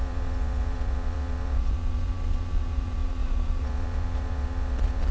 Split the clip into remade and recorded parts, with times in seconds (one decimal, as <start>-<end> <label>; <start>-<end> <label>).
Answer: 0.0-5.1 remade